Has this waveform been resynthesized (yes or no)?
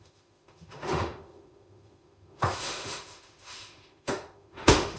yes